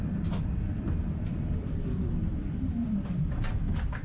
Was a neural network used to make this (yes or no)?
yes